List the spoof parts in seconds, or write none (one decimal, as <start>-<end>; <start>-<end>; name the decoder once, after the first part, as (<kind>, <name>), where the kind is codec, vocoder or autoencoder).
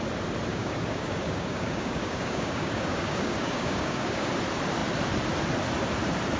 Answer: 0.5-4.3 (codec, DAC)